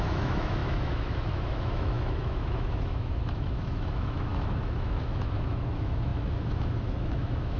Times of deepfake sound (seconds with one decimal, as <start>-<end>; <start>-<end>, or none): 0.0-7.6